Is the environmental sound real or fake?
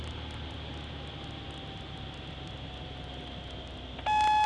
real